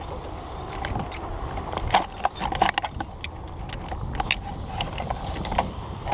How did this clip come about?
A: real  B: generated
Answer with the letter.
A